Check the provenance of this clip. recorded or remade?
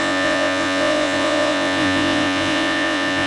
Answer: remade